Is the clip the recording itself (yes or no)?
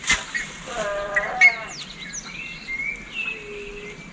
yes